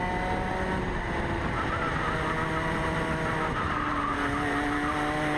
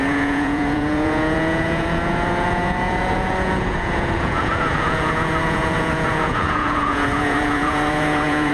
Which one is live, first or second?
first